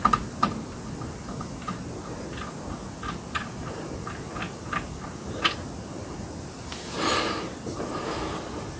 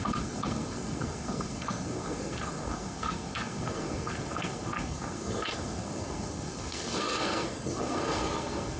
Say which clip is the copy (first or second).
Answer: second